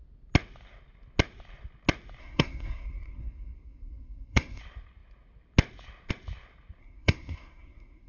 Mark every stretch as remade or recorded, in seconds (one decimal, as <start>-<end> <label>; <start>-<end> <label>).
0.0-2.2 recorded; 2.2-4.6 remade; 4.6-6.8 recorded; 6.8-8.1 remade

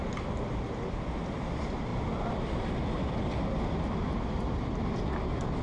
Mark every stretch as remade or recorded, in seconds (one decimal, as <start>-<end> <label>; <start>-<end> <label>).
0.0-5.6 recorded

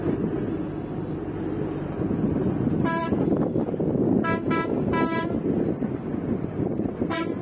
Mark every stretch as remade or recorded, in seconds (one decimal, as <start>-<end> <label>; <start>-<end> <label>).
0.0-7.4 recorded

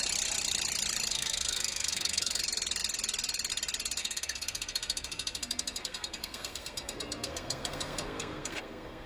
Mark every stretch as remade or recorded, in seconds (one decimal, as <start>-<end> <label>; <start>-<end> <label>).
0.0-1.1 recorded; 1.1-2.4 remade; 2.4-4.0 recorded; 4.0-9.1 remade

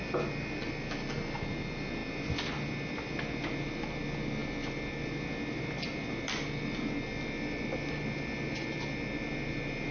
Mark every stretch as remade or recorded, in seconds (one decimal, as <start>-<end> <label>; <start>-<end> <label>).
0.0-9.9 recorded

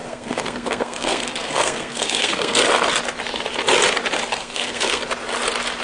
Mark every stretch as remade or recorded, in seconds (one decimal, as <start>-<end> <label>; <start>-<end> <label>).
0.0-2.6 remade; 2.6-4.4 recorded; 4.4-5.0 remade; 5.0-5.8 recorded

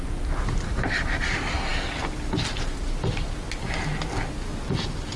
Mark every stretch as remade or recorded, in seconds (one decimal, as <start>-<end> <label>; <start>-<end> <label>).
0.0-5.2 recorded